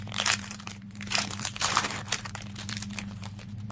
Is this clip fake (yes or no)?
yes